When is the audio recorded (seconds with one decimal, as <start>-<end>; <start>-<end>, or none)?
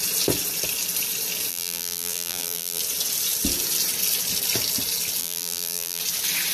0.0-1.5; 2.8-5.2; 6.0-6.5